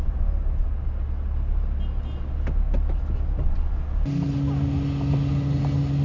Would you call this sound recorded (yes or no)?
yes